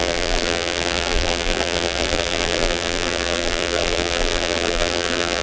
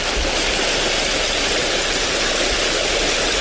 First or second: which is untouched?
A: second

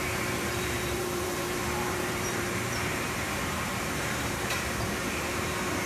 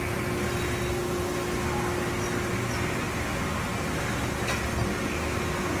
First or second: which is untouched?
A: second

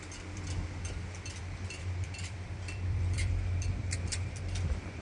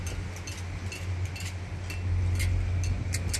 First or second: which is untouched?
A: second